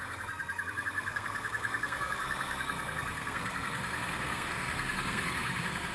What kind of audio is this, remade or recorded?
remade